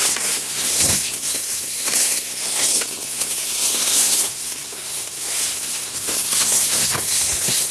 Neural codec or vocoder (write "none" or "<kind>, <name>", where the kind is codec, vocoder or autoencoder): codec, SNAC